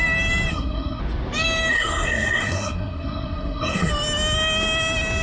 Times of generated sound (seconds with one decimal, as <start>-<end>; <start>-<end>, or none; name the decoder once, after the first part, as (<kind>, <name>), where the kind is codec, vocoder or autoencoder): 0.5-1.0 (codec, SNAC); 1.7-3.9